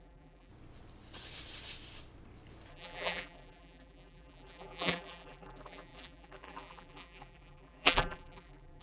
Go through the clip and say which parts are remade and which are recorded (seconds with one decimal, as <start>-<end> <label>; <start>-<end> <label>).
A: 0.0-0.5 remade; 0.5-2.7 recorded; 2.7-8.8 remade